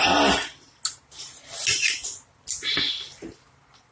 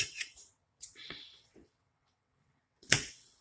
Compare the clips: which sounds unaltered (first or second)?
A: first